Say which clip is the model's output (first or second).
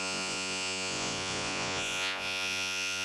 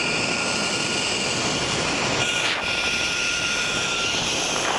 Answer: first